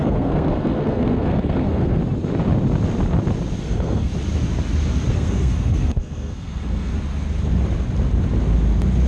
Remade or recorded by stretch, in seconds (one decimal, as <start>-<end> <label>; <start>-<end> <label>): 0.0-2.0 remade; 2.0-3.6 recorded; 3.6-4.1 remade; 4.1-5.1 recorded; 5.1-6.9 remade; 6.9-9.1 recorded